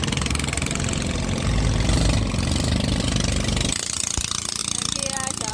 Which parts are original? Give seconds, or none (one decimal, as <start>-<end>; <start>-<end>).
0.0-5.5